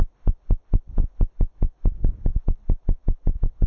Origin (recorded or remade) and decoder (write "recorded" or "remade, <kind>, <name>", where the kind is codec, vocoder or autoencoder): recorded